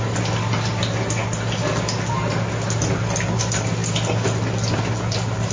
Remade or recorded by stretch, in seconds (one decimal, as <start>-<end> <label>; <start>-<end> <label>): 0.0-5.5 recorded